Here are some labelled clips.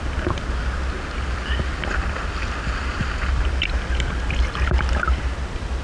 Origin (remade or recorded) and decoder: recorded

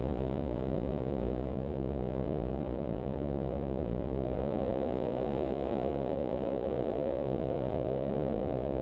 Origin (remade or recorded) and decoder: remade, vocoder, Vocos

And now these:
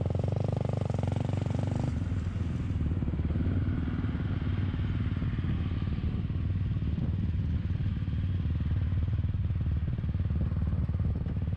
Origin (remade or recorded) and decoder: recorded